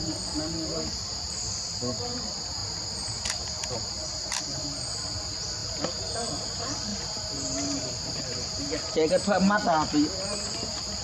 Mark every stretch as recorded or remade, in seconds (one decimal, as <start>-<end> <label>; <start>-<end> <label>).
0.0-6.9 recorded; 6.9-9.1 remade; 9.1-11.0 recorded